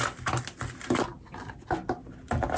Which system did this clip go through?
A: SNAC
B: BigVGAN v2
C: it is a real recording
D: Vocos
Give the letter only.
C